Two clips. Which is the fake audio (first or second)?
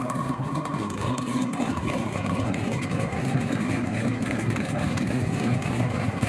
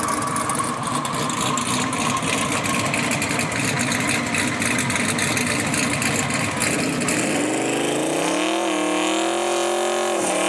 first